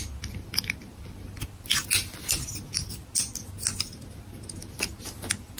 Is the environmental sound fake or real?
real